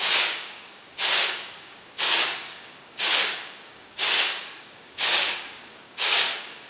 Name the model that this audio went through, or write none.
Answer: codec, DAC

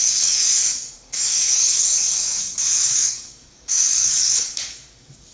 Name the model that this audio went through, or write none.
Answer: codec, DAC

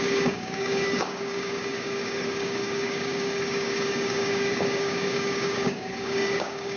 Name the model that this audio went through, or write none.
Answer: codec, DAC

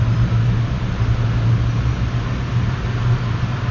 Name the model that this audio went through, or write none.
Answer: none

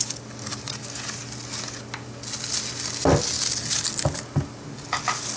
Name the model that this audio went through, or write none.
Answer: none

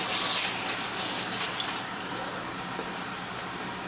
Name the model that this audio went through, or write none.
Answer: none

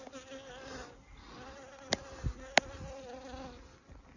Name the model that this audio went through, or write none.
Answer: none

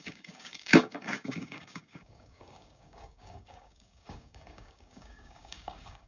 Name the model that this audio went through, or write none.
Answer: codec, DAC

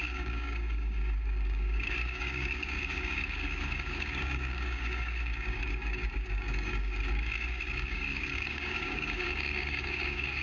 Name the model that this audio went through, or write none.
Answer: codec, DAC